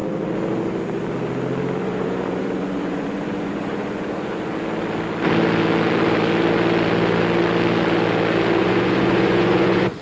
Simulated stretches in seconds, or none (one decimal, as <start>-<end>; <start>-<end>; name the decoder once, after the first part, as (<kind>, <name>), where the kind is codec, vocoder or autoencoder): 1.8-4.5 (vocoder, Vocos); 8.6-10.0